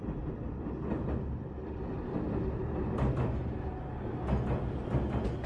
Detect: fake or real real